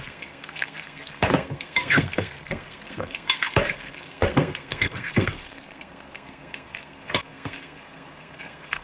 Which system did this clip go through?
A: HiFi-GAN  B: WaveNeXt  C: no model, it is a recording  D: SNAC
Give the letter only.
D